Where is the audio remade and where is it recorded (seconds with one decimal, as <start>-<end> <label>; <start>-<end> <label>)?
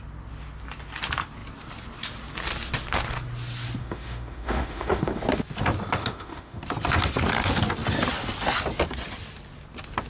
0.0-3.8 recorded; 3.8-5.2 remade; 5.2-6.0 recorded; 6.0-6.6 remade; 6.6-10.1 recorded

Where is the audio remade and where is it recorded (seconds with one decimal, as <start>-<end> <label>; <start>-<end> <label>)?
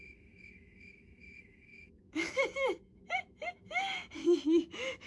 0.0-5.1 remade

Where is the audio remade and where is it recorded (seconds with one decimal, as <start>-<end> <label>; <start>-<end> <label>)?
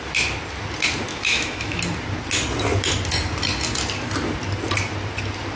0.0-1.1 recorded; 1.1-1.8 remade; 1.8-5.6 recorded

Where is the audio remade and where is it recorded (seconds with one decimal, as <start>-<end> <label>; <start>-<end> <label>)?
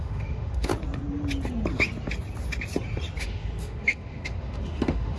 0.0-0.7 remade; 0.7-3.2 recorded; 3.2-5.2 remade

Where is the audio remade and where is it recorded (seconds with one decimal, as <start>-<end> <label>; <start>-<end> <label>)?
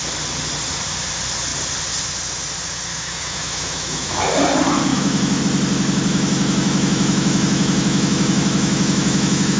0.0-2.9 recorded; 2.9-4.2 remade; 4.2-4.9 recorded; 4.9-5.4 remade; 5.4-6.1 recorded; 6.1-9.6 remade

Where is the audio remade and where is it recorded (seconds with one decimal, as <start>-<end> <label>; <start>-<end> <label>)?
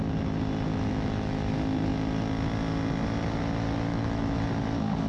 0.0-0.7 recorded; 0.7-1.5 remade; 1.5-3.9 recorded; 3.9-4.4 remade; 4.4-5.1 recorded